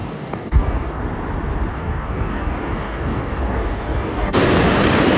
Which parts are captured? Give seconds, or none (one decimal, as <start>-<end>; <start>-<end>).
1.0-1.7; 4.4-5.2